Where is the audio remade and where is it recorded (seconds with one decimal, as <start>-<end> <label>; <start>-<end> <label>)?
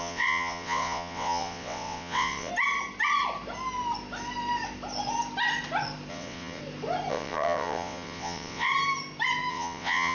0.0-2.5 remade; 2.5-6.1 recorded; 6.1-6.6 remade; 6.6-7.1 recorded; 7.1-8.7 remade; 8.7-9.5 recorded; 9.5-10.1 remade